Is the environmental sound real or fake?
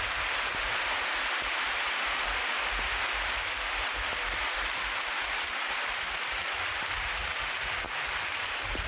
real